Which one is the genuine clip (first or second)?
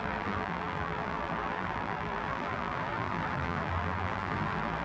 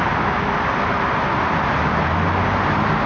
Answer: second